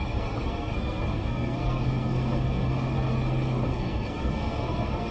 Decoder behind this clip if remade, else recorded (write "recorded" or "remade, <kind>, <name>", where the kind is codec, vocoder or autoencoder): remade, codec, SNAC